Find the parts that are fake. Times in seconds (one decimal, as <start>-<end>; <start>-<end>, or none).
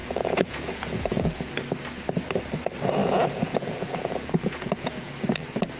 0.0-1.3; 3.0-5.1